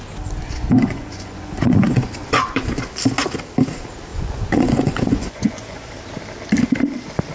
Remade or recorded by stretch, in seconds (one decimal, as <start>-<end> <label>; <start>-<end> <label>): 0.0-0.4 recorded; 0.4-2.8 remade; 2.8-4.1 recorded; 4.1-5.9 remade; 5.9-7.3 recorded